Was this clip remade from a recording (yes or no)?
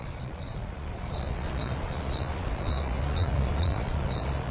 yes